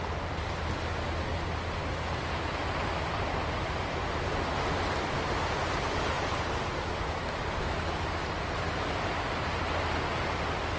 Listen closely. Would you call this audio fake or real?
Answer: real